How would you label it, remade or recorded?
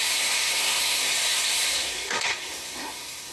remade